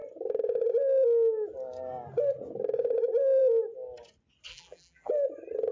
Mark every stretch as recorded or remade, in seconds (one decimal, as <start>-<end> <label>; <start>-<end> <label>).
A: 0.0-4.5 recorded; 4.5-5.1 remade; 5.1-5.7 recorded